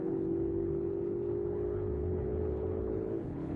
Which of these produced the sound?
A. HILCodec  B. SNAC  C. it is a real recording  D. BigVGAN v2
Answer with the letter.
A